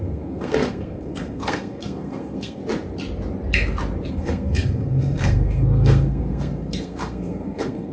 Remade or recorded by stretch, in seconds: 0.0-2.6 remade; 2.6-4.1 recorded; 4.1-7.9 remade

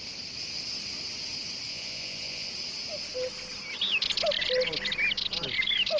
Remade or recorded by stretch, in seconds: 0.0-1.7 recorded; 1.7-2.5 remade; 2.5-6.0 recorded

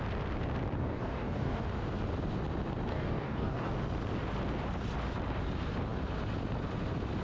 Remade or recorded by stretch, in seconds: 0.0-0.8 recorded; 0.8-1.6 remade; 1.6-2.9 recorded; 2.9-3.7 remade; 3.7-7.2 recorded

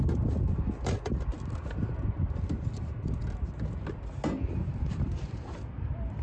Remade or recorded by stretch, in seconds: 0.0-1.3 remade; 1.3-4.5 recorded; 4.5-6.2 remade

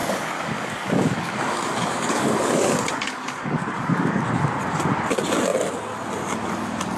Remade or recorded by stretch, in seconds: 0.0-4.2 remade; 4.2-7.0 recorded

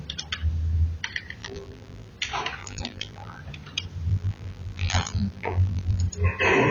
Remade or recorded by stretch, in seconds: 0.0-1.4 recorded; 1.4-2.1 remade; 2.1-2.6 recorded; 2.6-3.4 remade; 3.4-4.1 recorded; 4.1-6.0 remade; 6.0-6.7 recorded

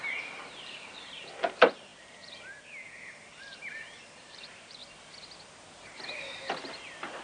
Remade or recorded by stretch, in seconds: 0.0-4.8 remade; 4.8-7.2 recorded

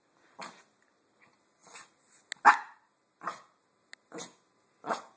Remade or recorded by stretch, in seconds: 0.0-5.2 recorded